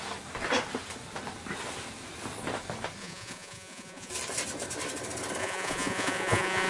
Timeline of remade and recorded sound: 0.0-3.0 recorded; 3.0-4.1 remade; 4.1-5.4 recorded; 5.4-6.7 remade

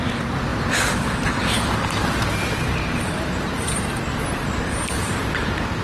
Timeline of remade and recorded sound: 0.0-0.5 recorded; 0.5-4.0 remade; 4.0-5.8 recorded